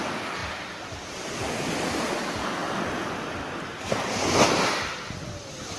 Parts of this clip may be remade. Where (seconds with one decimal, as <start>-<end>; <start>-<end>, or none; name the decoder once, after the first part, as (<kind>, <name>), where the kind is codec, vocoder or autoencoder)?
none